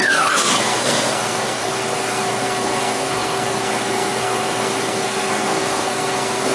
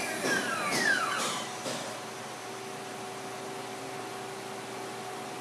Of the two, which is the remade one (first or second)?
first